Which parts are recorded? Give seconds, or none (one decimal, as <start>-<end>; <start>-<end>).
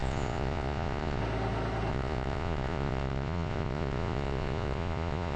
1.2-1.9